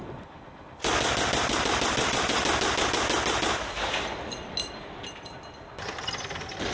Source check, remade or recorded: recorded